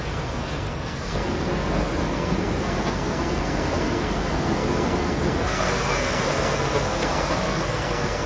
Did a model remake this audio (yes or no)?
yes